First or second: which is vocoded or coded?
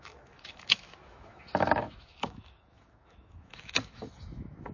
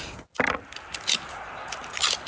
first